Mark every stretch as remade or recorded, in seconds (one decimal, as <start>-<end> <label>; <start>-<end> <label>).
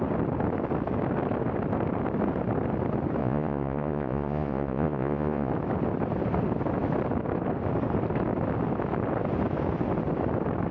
0.0-3.2 recorded; 3.2-5.5 remade; 5.5-10.7 recorded